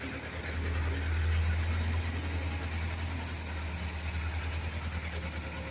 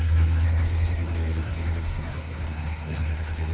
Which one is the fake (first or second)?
second